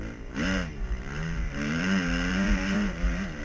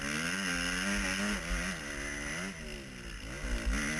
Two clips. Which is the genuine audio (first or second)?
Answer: second